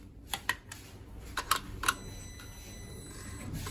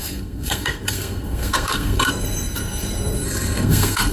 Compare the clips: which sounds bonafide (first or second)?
first